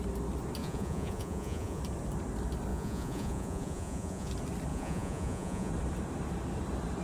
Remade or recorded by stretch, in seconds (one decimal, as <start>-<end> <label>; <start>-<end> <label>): 0.0-0.6 recorded; 0.6-1.8 remade; 1.8-2.7 recorded; 2.7-4.3 remade; 4.3-4.7 recorded; 4.7-5.7 remade; 5.7-7.0 recorded